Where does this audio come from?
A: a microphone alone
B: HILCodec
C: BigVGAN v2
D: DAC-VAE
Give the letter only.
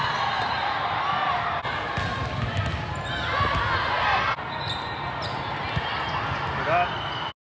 A